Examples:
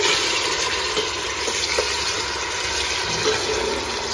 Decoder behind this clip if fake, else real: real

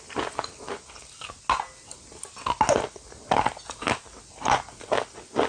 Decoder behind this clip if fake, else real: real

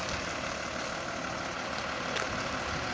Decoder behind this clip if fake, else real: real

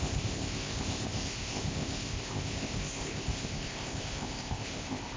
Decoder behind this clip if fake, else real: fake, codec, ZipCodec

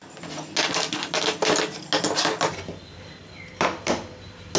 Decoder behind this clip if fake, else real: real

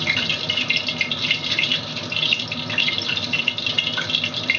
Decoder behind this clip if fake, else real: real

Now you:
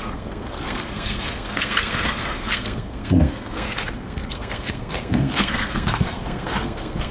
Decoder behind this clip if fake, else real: fake, codec, SNAC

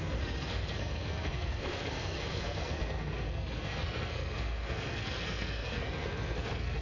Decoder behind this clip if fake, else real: fake, codec, SNAC